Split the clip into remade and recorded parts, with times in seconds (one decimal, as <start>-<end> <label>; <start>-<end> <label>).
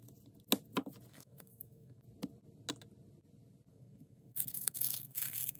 0.0-1.1 recorded; 1.1-2.0 remade; 2.0-3.7 recorded; 3.7-5.6 remade